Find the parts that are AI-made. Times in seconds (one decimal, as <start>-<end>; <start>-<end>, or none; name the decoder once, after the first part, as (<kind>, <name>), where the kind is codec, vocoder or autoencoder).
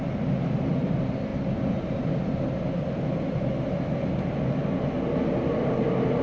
none